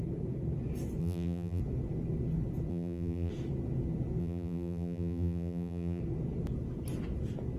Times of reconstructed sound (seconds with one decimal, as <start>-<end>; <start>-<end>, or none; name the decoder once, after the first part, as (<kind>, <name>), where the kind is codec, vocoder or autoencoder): 1.0-1.6 (vocoder, BigVGAN v2); 2.7-3.3; 4.2-6.0

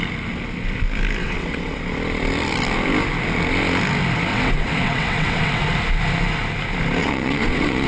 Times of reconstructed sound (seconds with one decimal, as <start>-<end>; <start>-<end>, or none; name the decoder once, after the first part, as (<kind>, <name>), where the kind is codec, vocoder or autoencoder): 1.2-1.8 (vocoder, WaveNeXt); 4.3-5.6; 7.0-7.9